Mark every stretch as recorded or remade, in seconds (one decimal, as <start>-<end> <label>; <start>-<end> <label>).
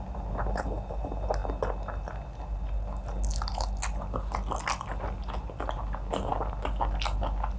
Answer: 0.0-7.6 recorded